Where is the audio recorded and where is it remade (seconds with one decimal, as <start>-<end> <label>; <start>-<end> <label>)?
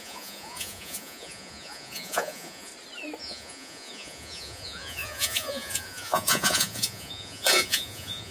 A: 0.0-2.7 remade; 2.7-3.2 recorded; 3.2-8.3 remade